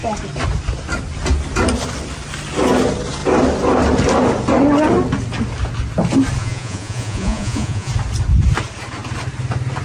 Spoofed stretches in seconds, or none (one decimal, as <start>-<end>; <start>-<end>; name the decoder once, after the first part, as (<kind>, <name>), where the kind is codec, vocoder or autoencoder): 6.4-7.9 (vocoder, Vocos)